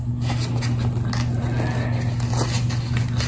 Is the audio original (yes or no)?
yes